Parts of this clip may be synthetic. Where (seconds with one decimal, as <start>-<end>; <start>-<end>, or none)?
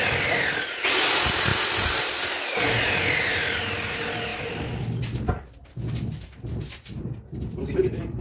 none